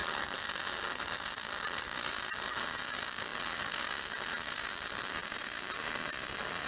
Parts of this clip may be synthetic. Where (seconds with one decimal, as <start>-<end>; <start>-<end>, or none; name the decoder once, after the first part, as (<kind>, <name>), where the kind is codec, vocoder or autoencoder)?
0.0-5.2 (vocoder, BigVGAN v2)